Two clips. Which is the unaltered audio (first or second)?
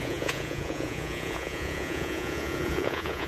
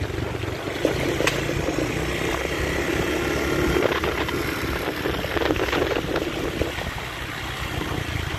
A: second